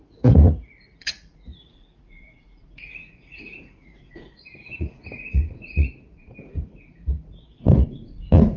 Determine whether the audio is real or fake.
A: fake